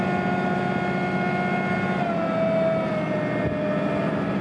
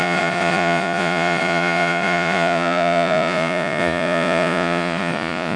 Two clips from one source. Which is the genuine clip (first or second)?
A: first